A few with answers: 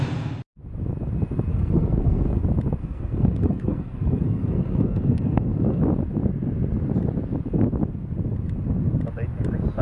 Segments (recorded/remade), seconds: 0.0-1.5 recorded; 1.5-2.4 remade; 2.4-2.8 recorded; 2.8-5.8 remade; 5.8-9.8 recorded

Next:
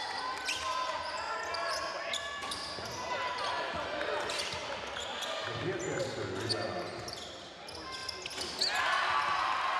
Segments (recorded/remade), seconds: 0.0-9.8 recorded